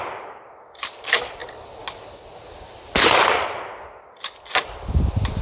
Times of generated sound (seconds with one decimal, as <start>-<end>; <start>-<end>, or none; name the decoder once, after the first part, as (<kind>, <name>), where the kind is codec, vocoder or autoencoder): none